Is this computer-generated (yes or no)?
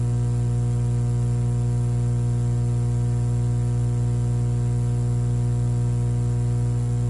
no